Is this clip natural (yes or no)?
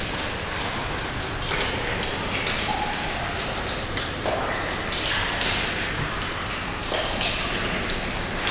yes